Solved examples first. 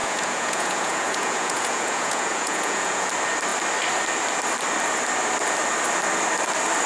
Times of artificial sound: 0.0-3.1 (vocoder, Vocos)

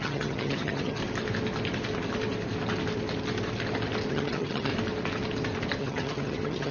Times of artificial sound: 0.0-1.0 (vocoder, HiFi-GAN); 4.1-4.7; 5.8-6.7

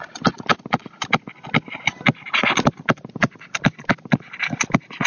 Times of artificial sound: 3.2-4.4 (vocoder, BigVGAN v2)

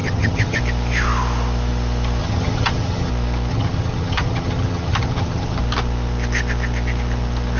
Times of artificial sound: 0.0-0.6 (vocoder, HiFi-GAN); 2.2-3.1; 3.5-5.6

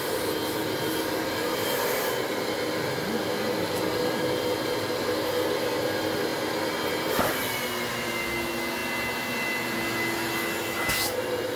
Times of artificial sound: none

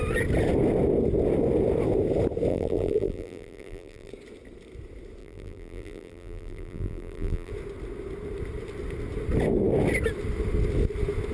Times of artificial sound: 2.5-4.1 (vocoder, BigVGAN v2); 5.2-7.5